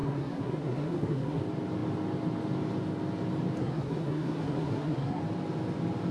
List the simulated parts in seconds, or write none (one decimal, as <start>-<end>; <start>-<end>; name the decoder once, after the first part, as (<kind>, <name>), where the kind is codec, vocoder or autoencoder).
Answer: 0.0-1.4 (codec, SNAC); 3.6-5.2